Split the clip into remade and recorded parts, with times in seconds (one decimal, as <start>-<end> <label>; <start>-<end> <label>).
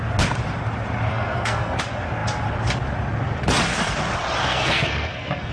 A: 0.0-1.1 recorded; 1.1-1.8 remade; 1.8-4.4 recorded; 4.4-5.5 remade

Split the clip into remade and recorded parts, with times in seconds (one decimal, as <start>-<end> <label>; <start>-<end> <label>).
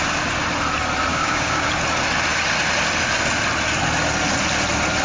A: 0.0-1.1 recorded; 1.1-1.7 remade; 1.7-5.0 recorded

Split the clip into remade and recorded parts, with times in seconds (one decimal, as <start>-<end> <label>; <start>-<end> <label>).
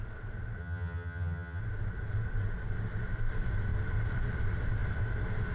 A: 0.0-0.6 recorded; 0.6-1.6 remade; 1.6-5.5 recorded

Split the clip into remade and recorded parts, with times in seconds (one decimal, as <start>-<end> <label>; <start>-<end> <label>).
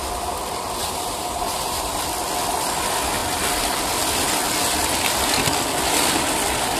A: 0.0-0.8 recorded; 0.8-1.9 remade; 1.9-6.8 recorded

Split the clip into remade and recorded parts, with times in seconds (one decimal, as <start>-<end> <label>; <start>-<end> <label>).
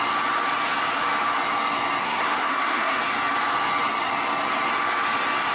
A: 0.0-2.0 recorded; 2.0-3.0 remade; 3.0-5.5 recorded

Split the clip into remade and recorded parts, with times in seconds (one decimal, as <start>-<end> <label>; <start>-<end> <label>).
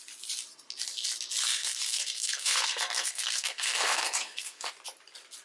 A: 0.0-1.5 recorded; 1.5-4.7 remade; 4.7-5.4 recorded